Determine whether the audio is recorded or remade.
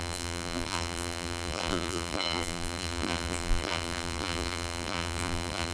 remade